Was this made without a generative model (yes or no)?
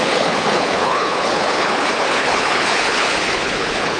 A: no